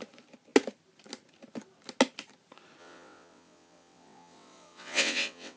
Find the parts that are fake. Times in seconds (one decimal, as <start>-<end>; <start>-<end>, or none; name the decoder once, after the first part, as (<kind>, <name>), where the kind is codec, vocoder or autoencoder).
2.8-5.6 (vocoder, WaveNeXt)